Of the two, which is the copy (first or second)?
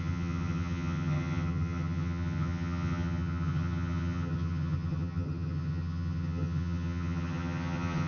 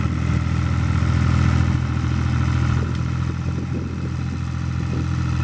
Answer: first